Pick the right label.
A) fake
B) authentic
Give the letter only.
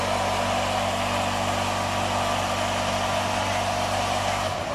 B